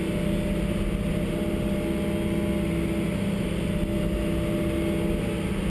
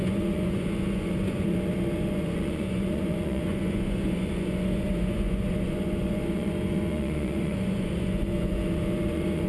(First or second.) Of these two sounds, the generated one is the second